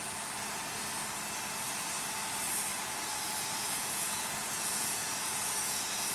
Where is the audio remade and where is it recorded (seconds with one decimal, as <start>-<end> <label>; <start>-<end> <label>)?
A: 0.0-2.7 recorded; 2.7-6.1 remade